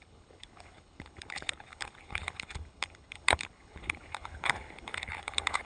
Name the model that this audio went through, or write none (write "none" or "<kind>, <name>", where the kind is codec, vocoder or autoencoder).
codec, HILCodec